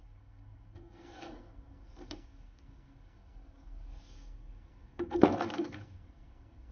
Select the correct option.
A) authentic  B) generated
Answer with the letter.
B